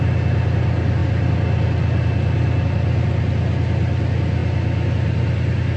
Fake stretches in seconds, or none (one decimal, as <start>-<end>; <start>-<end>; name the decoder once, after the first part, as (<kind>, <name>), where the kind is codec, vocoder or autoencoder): none